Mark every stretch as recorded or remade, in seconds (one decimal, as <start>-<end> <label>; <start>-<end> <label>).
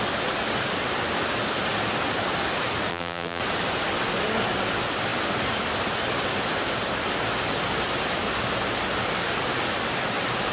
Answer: 0.0-2.9 recorded; 2.9-3.4 remade; 3.4-10.5 recorded